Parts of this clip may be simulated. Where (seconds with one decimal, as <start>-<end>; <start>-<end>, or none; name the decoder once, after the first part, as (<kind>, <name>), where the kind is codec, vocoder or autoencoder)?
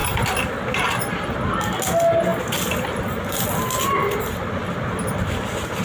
none